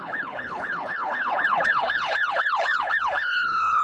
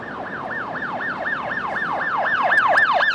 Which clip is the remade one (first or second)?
first